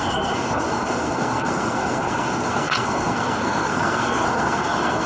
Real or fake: fake